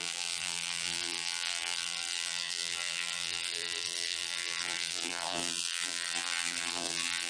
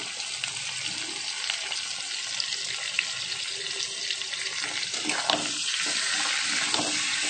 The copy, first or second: first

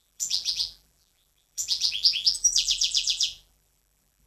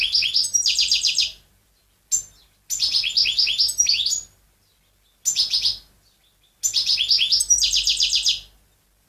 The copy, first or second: first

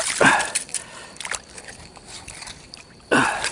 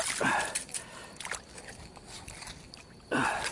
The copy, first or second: first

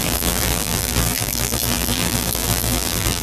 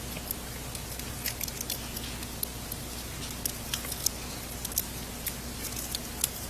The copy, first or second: first